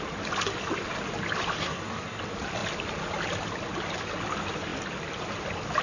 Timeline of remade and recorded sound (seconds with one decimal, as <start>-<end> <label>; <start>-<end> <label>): 0.0-1.6 recorded; 1.6-2.2 remade; 2.2-5.8 recorded